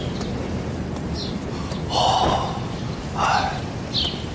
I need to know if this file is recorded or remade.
recorded